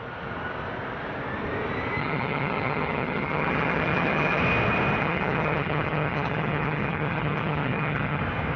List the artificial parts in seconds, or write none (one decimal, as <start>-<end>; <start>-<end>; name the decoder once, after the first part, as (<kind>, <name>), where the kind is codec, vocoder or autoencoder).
2.0-4.4 (vocoder, HiFi-GAN); 5.0-8.2